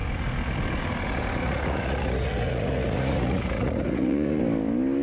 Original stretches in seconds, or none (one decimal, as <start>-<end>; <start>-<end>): 0.0-1.4; 4.4-5.0